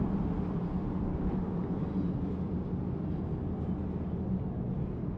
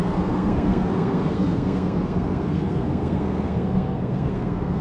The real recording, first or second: first